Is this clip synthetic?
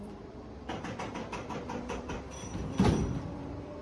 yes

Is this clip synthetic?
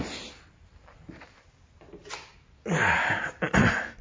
no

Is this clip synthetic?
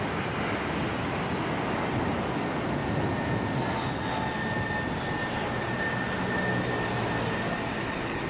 no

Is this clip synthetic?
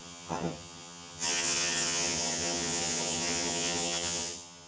yes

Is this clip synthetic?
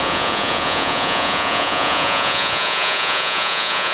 yes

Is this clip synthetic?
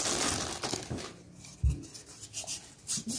no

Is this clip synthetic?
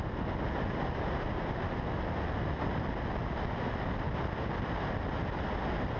no